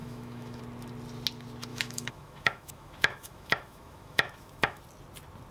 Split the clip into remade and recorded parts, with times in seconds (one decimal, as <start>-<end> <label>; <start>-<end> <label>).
0.0-0.6 remade; 0.6-1.7 recorded; 1.7-4.8 remade; 4.8-5.5 recorded